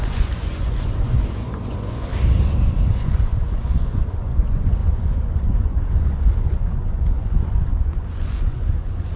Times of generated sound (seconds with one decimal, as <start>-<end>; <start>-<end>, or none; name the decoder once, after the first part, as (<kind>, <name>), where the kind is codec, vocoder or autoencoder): 0.0-2.1 (vocoder, Vocos); 2.9-9.2